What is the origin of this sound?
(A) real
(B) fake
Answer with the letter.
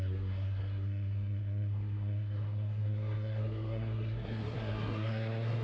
B